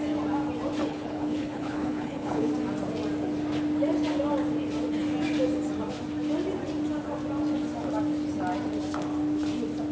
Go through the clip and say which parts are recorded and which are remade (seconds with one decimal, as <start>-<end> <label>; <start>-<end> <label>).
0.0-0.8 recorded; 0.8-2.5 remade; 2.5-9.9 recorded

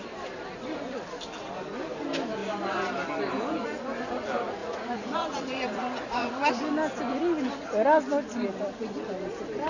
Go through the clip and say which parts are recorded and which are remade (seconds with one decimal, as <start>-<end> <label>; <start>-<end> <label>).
0.0-4.6 recorded; 4.6-6.6 remade; 6.6-9.7 recorded

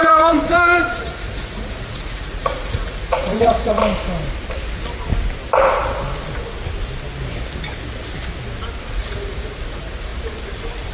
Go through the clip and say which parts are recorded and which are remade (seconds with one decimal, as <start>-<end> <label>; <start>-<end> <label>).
0.0-3.8 remade; 3.8-8.9 recorded; 8.9-10.1 remade; 10.1-10.9 recorded

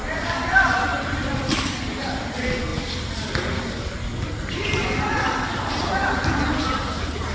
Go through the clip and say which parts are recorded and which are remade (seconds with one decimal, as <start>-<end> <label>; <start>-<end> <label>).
0.0-7.3 recorded

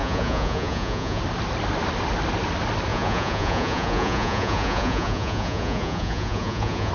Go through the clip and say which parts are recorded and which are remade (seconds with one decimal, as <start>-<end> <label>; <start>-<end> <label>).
0.0-1.2 remade; 1.2-2.9 recorded; 2.9-6.9 remade

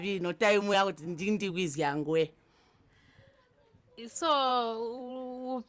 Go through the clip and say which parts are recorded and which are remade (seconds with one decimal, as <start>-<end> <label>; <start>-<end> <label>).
0.0-0.5 recorded; 0.5-1.5 remade; 1.5-4.5 recorded; 4.5-5.1 remade; 5.1-5.7 recorded

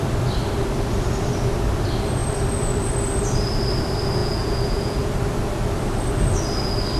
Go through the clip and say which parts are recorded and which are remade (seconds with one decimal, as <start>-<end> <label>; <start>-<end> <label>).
0.0-4.2 recorded; 4.2-5.1 remade; 5.1-7.0 recorded